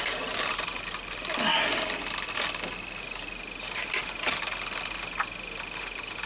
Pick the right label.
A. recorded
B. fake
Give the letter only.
A